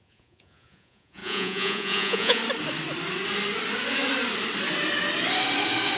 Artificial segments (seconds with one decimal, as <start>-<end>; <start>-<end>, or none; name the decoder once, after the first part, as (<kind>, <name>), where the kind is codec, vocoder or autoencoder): 0.0-2.4 (vocoder, Vocos)